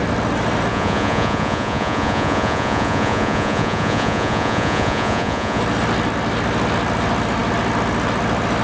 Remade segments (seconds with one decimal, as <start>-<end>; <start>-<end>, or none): 0.7-5.6

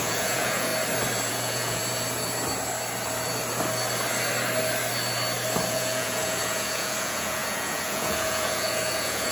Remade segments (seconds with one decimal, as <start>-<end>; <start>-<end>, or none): 0.0-0.7; 1.3-1.8; 5.7-9.3

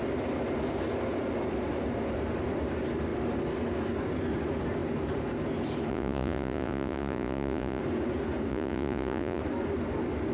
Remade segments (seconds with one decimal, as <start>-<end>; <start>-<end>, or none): 5.9-7.8; 8.5-9.4

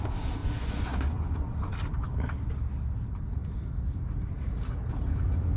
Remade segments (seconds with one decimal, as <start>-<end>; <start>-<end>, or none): 0.4-1.7

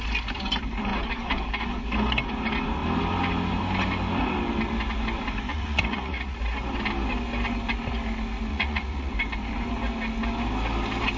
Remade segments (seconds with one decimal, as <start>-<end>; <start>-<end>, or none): 5.5-6.4; 8.5-9.1

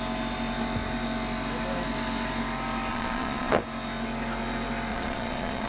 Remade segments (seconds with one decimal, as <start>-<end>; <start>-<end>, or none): 2.9-3.6; 4.9-5.7

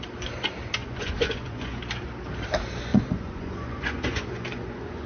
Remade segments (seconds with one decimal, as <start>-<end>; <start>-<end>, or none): 0.8-1.8; 2.9-5.1

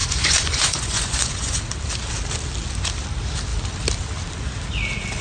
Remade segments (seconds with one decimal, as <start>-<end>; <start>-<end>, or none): 0.0-1.6